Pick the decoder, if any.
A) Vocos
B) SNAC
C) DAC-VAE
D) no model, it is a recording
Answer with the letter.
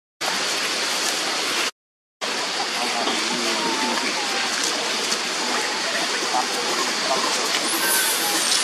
D